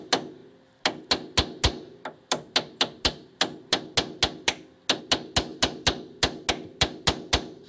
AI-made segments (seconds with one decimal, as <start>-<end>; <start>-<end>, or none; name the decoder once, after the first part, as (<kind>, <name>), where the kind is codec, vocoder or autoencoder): none